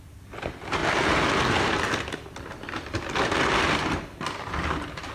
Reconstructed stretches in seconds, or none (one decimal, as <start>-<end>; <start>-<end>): none